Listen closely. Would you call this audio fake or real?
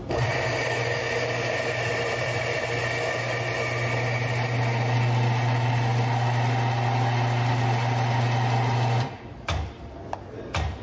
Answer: real